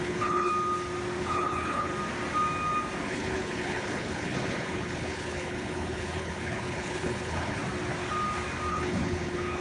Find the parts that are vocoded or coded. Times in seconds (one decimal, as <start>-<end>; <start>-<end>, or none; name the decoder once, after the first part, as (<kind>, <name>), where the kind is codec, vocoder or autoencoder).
0.0-0.5 (codec, HILCodec); 1.2-1.9; 3.0-7.6; 8.7-9.6